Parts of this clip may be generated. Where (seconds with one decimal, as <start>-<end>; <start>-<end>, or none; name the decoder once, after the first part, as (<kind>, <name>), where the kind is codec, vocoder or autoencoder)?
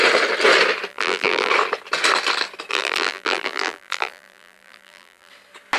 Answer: 0.9-1.5 (vocoder, BigVGAN v2); 2.7-5.3